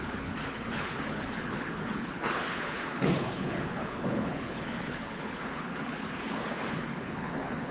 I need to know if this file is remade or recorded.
remade